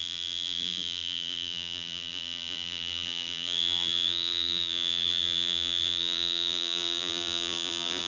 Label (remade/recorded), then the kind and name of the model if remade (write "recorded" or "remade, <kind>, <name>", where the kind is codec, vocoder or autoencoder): remade, vocoder, BigVGAN v2